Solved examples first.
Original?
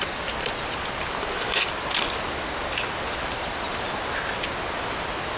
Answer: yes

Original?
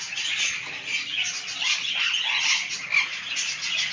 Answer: yes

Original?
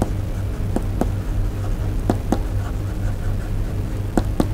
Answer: yes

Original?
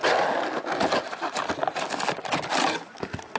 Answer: yes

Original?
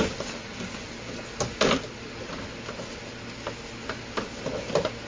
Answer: yes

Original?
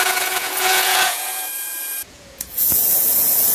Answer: no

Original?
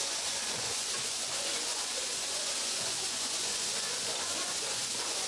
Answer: no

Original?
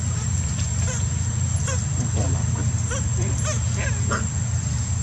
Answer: yes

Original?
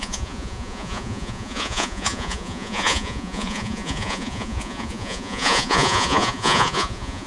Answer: no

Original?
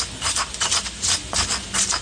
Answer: yes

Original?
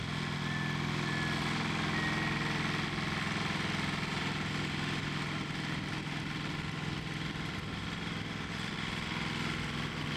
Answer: yes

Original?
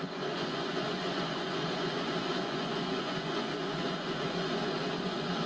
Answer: no